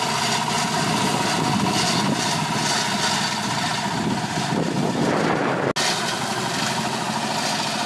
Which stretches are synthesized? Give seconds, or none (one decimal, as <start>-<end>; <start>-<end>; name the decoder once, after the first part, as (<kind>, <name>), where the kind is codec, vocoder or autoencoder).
none

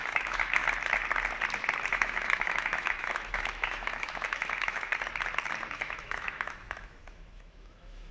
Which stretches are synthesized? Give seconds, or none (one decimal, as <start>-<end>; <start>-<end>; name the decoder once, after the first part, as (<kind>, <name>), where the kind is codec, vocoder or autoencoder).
0.0-0.6 (autoencoder, DAC-VAE); 1.9-4.9; 5.7-8.1

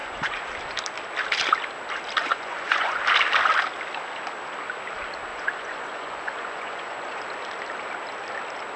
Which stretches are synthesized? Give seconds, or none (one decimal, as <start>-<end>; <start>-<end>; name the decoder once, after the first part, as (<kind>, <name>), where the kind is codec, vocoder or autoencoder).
0.0-0.5 (vocoder, Vocos); 2.2-3.0; 5.3-7.2

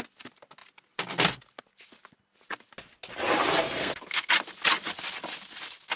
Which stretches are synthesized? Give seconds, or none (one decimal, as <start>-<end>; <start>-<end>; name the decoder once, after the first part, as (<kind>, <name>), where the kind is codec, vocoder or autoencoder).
3.8-4.3 (codec, SNAC)

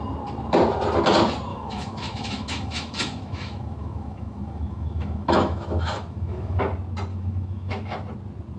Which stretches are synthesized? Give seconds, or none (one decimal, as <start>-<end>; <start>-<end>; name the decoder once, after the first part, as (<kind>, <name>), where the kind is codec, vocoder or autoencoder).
1.5-6.6 (autoencoder, DAC-VAE); 7.1-8.0

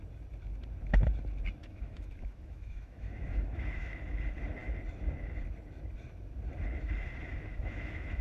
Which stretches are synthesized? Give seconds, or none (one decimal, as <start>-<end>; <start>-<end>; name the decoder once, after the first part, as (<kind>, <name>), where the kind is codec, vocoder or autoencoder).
1.6-4.0 (autoencoder, DAC-VAE); 7.3-8.2